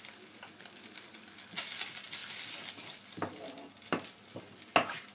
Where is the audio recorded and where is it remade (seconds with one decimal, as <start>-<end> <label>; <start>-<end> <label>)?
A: 0.0-5.1 recorded

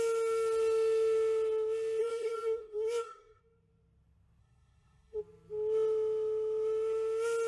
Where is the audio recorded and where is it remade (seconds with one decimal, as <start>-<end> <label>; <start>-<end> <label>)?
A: 0.0-2.0 recorded; 2.0-3.4 remade; 3.4-4.4 recorded; 4.4-5.2 remade; 5.2-7.5 recorded

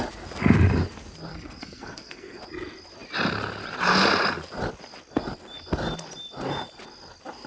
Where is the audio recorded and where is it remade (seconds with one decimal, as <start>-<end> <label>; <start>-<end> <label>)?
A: 0.0-1.3 recorded; 1.3-2.4 remade; 2.4-7.5 recorded

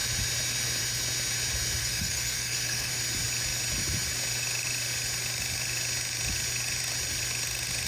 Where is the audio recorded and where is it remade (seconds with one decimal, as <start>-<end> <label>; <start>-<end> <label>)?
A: 0.0-1.8 recorded; 1.8-2.9 remade; 2.9-7.9 recorded

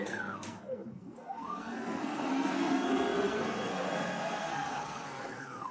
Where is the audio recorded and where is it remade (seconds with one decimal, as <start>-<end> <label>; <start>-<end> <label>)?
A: 0.0-5.7 remade

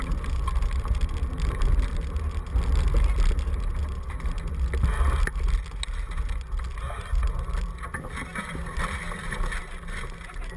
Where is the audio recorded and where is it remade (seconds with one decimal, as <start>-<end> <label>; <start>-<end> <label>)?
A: 0.0-10.6 recorded

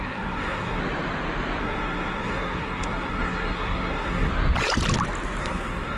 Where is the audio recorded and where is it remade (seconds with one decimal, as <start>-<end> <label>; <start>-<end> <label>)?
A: 0.0-0.8 remade; 0.8-1.6 recorded; 1.6-4.3 remade; 4.3-5.4 recorded; 5.4-6.0 remade

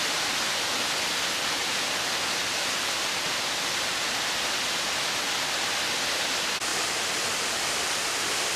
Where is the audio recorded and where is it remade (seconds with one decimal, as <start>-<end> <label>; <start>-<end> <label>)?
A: 0.0-8.6 recorded